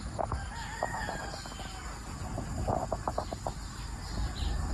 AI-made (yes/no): no